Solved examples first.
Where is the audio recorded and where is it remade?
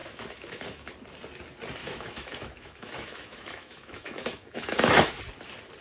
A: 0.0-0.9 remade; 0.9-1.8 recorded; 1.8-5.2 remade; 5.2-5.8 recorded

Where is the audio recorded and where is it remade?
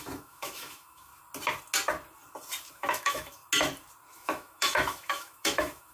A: 0.0-1.1 remade; 1.1-2.7 recorded; 2.7-3.4 remade; 3.4-4.1 recorded; 4.1-5.9 remade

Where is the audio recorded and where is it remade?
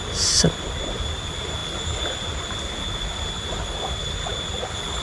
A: 0.0-5.0 recorded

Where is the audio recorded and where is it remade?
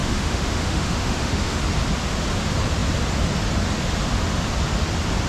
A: 0.0-1.6 remade; 1.6-5.3 recorded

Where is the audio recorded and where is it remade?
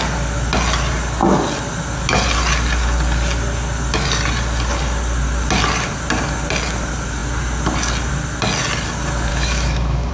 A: 0.0-9.3 recorded; 9.3-10.1 remade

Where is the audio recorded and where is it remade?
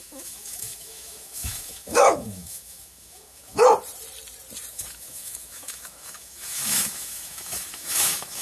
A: 0.0-3.6 remade; 3.6-4.7 recorded; 4.7-8.4 remade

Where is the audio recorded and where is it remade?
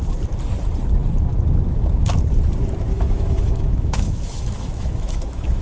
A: 0.0-2.9 recorded; 2.9-5.6 remade